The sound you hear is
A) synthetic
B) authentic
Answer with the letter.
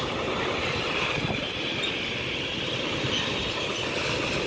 A